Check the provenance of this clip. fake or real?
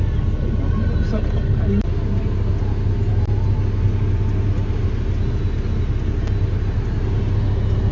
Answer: real